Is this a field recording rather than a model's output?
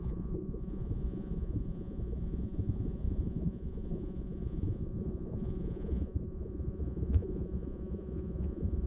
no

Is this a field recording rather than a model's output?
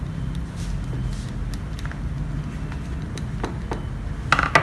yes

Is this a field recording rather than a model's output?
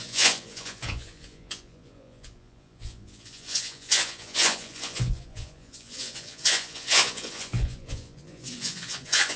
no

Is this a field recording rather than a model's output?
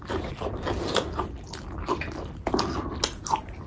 yes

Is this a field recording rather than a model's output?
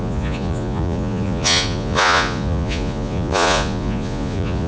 no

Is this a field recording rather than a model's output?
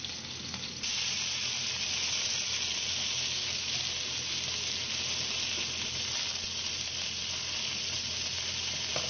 yes